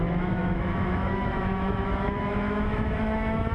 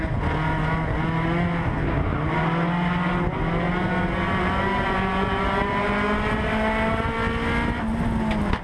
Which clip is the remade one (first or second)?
first